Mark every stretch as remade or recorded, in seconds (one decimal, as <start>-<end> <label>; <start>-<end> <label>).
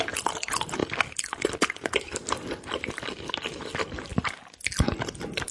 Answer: 0.0-5.5 recorded